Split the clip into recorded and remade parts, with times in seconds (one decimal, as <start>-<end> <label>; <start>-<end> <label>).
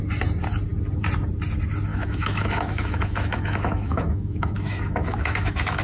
0.0-1.9 recorded; 1.9-5.8 remade